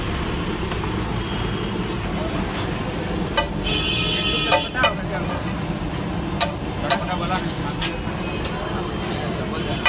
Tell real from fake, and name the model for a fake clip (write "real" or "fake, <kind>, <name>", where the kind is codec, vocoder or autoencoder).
real